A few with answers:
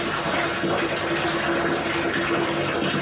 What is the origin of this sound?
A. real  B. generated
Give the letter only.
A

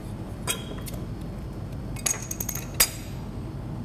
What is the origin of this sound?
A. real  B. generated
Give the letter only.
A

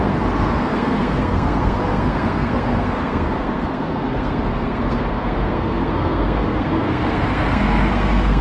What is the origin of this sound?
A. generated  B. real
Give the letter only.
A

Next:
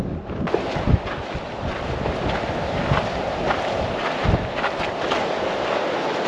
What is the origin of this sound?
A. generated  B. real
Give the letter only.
B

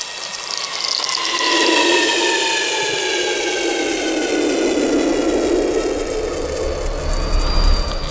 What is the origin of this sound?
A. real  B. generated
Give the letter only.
A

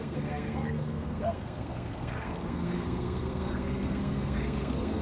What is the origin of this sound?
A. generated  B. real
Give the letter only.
A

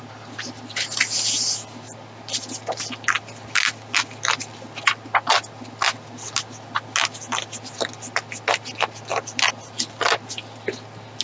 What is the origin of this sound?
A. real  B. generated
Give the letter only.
A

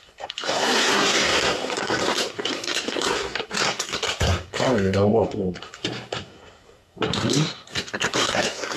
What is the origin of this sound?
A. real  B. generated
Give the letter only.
B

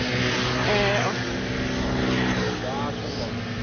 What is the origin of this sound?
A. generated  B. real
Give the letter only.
B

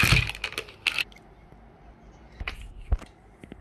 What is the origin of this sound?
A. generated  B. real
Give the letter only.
B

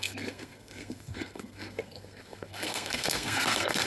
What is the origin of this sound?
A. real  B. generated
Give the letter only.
B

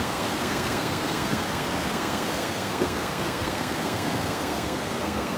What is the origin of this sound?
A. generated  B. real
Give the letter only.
A